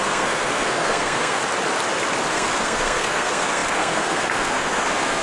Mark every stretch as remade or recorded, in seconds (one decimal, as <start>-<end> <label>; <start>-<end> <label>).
0.0-1.4 remade; 1.4-2.3 recorded; 2.3-5.2 remade